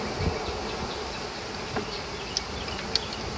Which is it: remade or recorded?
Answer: recorded